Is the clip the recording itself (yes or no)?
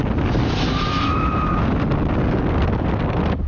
yes